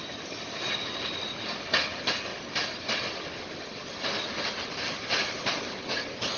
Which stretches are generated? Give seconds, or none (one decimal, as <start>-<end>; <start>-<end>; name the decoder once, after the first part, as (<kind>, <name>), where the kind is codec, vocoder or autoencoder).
none